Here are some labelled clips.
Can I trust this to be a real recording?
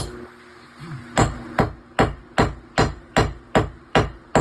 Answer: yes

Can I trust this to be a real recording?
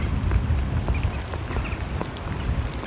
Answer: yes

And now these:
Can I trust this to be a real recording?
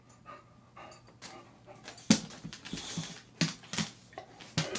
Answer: yes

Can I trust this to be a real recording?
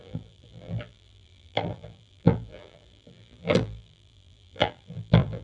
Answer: no